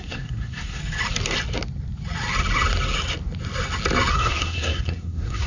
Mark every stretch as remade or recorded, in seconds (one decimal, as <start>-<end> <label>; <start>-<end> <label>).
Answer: 0.0-0.8 remade; 0.8-4.1 recorded; 4.1-5.5 remade